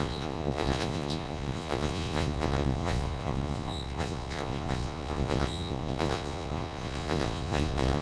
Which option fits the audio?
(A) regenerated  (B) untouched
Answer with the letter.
A